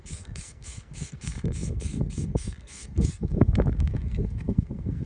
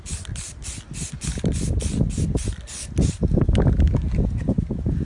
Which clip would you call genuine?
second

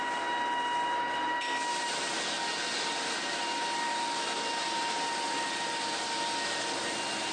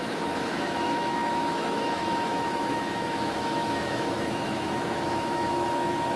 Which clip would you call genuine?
first